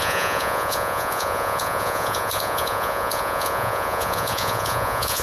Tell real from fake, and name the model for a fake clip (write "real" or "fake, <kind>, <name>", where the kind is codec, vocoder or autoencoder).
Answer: fake, vocoder, Vocos